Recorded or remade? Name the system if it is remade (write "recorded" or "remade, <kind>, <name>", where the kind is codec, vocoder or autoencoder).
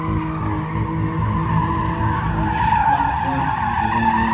recorded